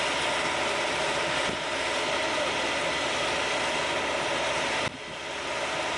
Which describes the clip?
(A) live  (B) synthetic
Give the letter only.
A